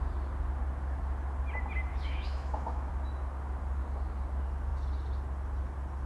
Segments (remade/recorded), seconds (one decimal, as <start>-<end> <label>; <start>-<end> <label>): 0.0-1.9 recorded; 1.9-2.9 remade; 2.9-6.1 recorded